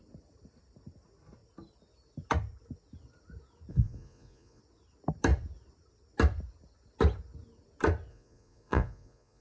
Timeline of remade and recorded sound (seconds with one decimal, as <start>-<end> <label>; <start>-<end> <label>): 0.0-3.7 recorded; 3.7-4.6 remade; 4.6-8.1 recorded; 8.1-9.4 remade